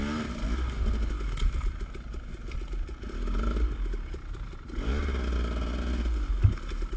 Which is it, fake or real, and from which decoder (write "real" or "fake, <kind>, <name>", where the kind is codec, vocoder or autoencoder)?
real